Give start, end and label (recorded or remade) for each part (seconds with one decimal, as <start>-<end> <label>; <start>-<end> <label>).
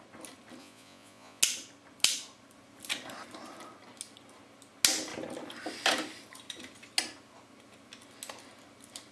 0.0-0.6 recorded; 0.6-1.4 remade; 1.4-9.1 recorded